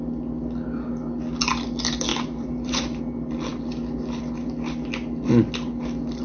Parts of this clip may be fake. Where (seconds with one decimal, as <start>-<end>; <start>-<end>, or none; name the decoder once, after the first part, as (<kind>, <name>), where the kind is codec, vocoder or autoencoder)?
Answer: 2.1-3.0 (vocoder, BigVGAN v2)